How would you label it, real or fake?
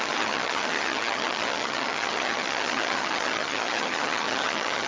fake